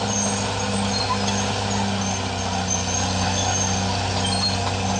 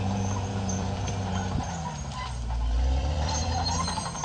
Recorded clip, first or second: first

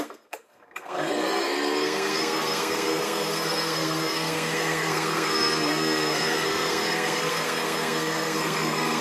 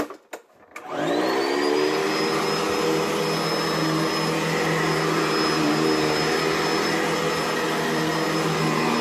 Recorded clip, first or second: second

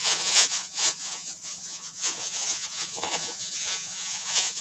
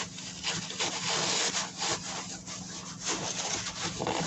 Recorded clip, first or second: second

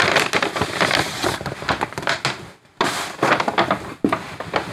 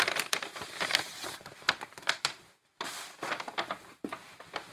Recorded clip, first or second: first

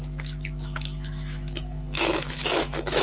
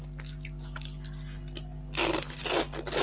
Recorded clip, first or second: second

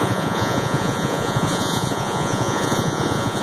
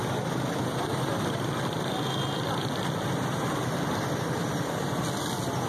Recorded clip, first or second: second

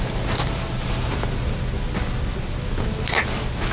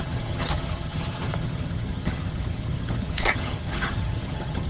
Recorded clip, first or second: first